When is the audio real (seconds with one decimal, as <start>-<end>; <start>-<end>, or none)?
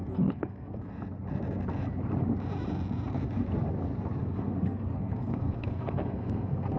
0.9-4.2